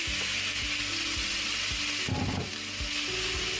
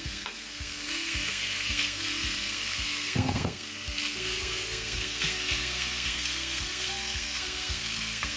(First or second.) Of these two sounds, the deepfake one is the second